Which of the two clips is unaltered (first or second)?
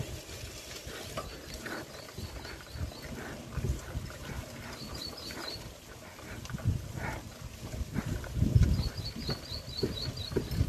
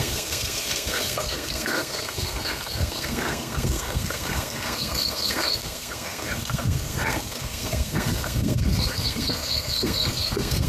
first